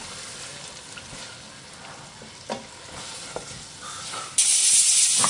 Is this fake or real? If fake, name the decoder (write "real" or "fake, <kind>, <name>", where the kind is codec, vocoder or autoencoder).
real